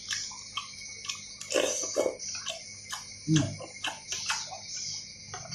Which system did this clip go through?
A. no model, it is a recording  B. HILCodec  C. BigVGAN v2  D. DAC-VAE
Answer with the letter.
A